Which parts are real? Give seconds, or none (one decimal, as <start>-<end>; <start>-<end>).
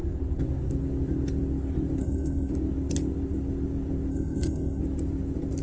0.0-2.0; 2.5-4.1; 4.8-5.6